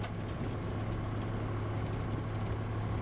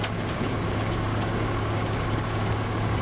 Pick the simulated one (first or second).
second